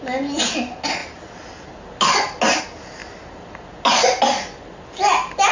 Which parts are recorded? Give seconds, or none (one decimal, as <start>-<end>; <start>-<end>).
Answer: 0.0-5.5